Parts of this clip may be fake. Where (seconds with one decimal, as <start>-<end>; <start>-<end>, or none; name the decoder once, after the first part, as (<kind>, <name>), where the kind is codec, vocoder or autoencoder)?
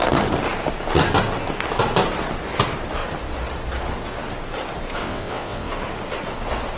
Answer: 5.0-5.7 (vocoder, WaveNeXt)